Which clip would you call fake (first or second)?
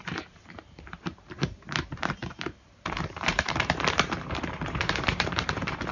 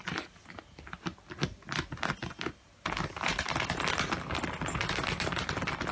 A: first